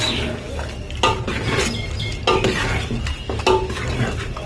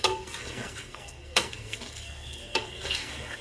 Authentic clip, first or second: first